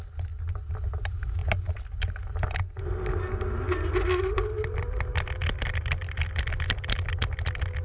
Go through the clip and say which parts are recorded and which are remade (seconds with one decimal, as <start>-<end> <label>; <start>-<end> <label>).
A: 0.0-7.8 recorded